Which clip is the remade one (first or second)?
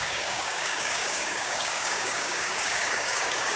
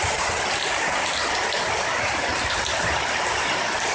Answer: first